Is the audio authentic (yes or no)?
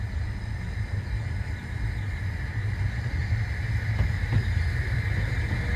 yes